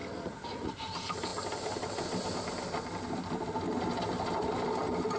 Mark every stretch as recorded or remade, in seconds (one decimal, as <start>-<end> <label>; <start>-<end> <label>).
0.0-0.7 remade; 0.7-5.2 recorded